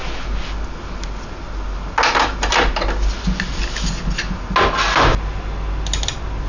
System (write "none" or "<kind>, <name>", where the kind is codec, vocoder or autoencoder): none